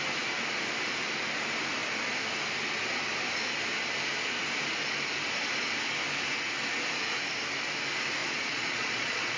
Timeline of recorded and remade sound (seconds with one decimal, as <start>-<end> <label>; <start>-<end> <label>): 0.0-8.2 recorded; 8.2-9.4 remade